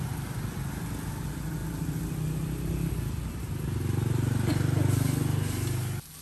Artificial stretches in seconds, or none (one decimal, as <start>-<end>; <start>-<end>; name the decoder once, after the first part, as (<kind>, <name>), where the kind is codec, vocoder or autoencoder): none